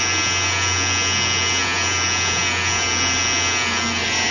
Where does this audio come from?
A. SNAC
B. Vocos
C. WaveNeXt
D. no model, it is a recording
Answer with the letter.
D